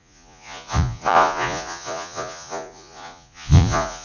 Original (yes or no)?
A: no